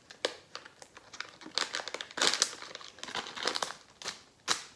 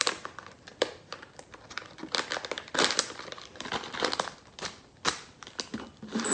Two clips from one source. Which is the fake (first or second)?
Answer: second